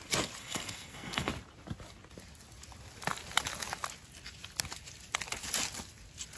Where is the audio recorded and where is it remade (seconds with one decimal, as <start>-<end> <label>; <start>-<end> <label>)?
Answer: 0.0-0.4 recorded; 0.4-1.3 remade; 1.3-6.4 recorded